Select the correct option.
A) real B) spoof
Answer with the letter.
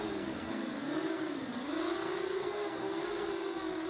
B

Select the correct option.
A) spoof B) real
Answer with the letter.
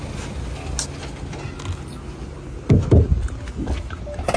B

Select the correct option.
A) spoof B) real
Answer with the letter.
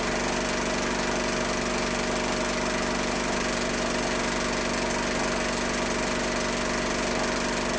B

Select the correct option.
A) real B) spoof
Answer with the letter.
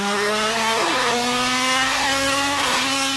B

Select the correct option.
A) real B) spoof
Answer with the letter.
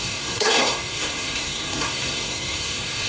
B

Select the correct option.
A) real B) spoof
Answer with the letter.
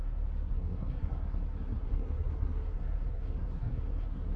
B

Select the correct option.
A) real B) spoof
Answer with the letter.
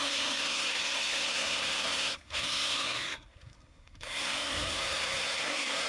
B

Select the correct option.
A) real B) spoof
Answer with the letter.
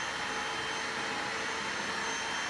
A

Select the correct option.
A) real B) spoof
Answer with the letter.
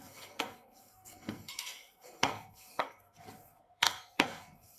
B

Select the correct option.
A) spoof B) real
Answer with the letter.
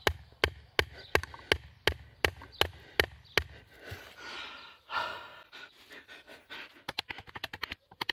B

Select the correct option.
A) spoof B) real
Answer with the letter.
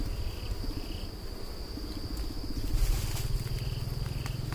B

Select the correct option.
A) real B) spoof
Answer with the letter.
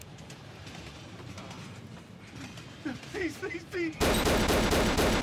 A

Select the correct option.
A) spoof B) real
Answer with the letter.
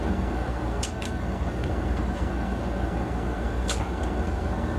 A